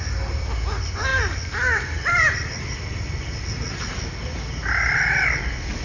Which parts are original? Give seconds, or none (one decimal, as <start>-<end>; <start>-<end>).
0.0-1.1; 3.3-5.8